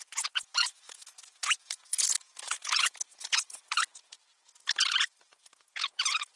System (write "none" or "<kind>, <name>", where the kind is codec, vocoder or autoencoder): vocoder, Vocos